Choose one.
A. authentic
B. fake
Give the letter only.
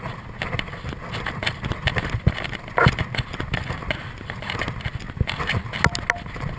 A